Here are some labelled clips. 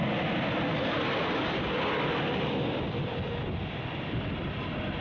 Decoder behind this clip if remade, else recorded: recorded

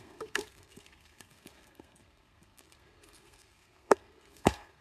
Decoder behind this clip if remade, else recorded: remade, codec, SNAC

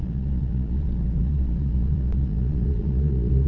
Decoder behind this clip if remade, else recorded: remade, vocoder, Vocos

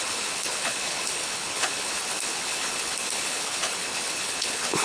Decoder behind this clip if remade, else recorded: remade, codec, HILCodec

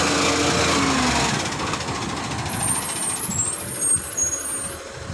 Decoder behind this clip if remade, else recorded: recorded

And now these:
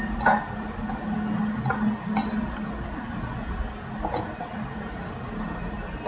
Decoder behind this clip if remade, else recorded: recorded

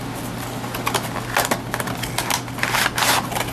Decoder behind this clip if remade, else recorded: recorded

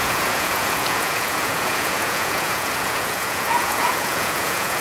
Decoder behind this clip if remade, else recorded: remade, vocoder, Vocos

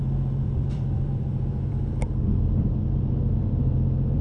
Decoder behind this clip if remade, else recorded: remade, vocoder, BigVGAN v2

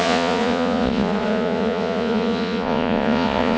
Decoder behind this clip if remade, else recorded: remade, vocoder, Vocos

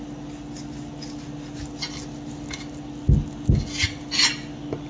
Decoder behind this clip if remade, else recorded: recorded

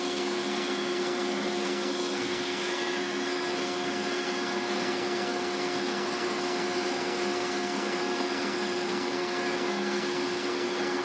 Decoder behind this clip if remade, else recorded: remade, codec, SNAC